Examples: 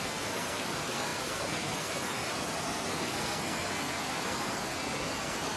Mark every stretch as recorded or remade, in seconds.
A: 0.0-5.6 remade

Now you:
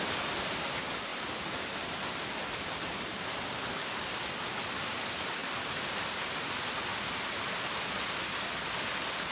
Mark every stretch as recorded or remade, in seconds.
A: 0.0-9.3 recorded

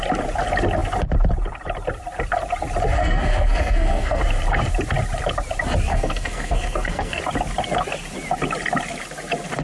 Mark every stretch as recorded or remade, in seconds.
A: 0.0-3.0 recorded; 3.0-4.2 remade; 4.2-5.9 recorded; 5.9-7.2 remade; 7.2-9.6 recorded

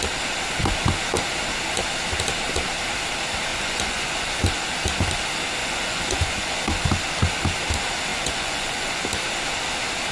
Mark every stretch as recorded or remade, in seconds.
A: 0.0-3.5 recorded; 3.5-4.4 remade; 4.4-5.6 recorded; 5.6-6.6 remade; 6.6-8.1 recorded; 8.1-9.0 remade; 9.0-10.1 recorded

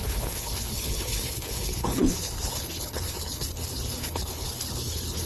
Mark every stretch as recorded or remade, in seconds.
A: 0.0-5.3 remade